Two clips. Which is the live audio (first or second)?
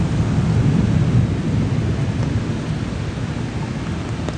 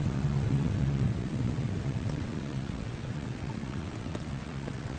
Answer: first